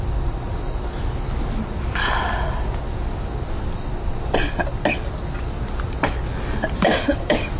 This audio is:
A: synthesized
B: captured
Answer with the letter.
B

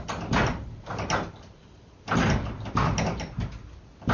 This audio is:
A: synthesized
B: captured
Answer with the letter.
B